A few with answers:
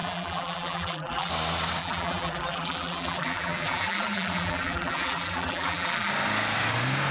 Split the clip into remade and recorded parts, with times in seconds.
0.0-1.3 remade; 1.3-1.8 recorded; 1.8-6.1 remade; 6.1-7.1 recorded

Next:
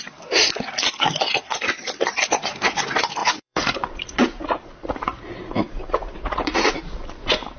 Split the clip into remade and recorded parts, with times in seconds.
0.0-3.2 recorded; 3.2-7.0 remade; 7.0-7.6 recorded

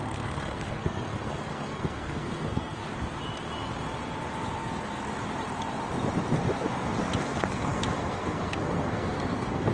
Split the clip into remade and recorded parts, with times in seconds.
0.0-2.8 remade; 2.8-7.2 recorded; 7.2-9.7 remade

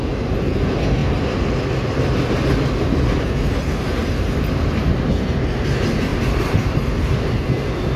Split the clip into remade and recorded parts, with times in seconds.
0.0-1.0 recorded; 1.0-1.5 remade; 1.5-4.0 recorded; 4.0-4.9 remade; 4.9-6.1 recorded; 6.1-7.4 remade; 7.4-8.0 recorded

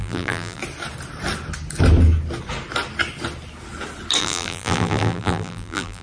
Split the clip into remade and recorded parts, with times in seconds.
0.0-0.6 remade; 0.6-4.2 recorded; 4.2-6.0 remade

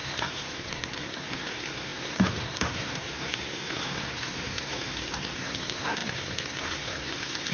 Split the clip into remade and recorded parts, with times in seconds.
0.0-7.5 remade

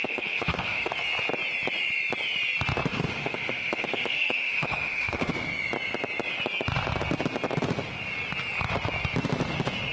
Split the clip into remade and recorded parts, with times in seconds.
0.0-0.9 remade; 0.9-2.9 recorded; 2.9-5.3 remade; 5.3-9.9 recorded